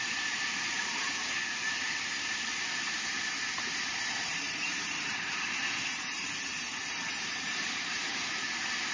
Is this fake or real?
fake